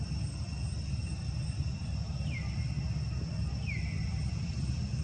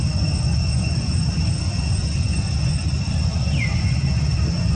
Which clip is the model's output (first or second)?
second